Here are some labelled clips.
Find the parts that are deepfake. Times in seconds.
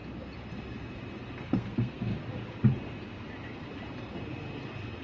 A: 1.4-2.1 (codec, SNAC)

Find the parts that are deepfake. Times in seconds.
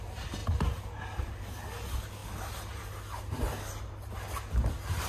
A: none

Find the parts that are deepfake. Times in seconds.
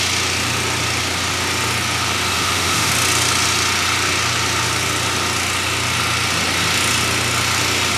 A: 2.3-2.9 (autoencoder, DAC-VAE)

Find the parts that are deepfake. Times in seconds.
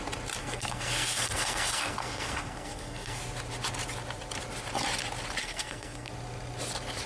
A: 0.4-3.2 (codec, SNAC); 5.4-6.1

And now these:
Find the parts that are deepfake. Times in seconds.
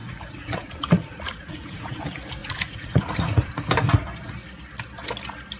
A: 0.0-2.0 (vocoder, Vocos); 2.4-3.5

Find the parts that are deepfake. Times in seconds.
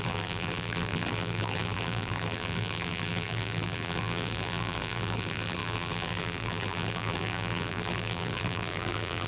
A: 0.0-9.3 (vocoder, BigVGAN v2)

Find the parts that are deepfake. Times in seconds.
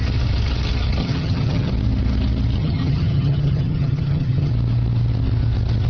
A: 1.0-1.7 (vocoder, HiFi-GAN); 2.6-4.5